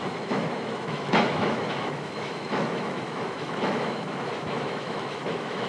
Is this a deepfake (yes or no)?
yes